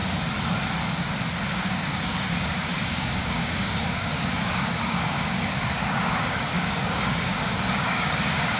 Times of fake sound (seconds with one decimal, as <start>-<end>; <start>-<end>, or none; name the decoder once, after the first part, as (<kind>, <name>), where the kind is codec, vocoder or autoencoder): 1.5-8.6 (codec, DAC)